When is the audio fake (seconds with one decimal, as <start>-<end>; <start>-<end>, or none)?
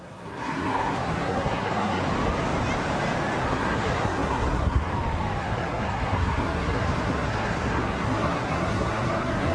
0.0-2.0; 3.4-4.9; 5.4-9.5